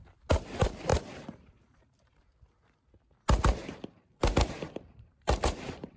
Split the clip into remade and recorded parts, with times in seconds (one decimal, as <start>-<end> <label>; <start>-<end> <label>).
0.0-0.9 recorded; 0.9-2.2 remade; 2.2-3.6 recorded; 3.6-6.0 remade